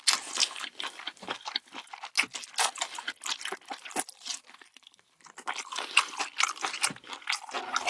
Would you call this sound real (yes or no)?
yes